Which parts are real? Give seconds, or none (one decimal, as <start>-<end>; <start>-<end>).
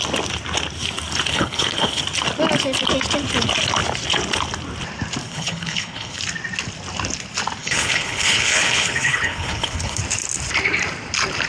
0.0-1.3; 2.0-5.2; 6.2-7.6; 10.0-11.5